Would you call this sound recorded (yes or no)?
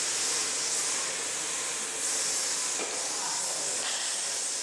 yes